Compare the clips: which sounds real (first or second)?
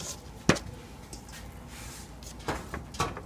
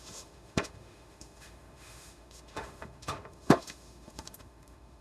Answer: first